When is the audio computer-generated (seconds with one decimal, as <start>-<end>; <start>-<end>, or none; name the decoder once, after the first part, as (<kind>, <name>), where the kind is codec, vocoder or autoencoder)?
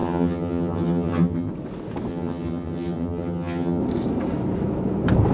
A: 0.0-1.5 (vocoder, HiFi-GAN); 2.1-3.8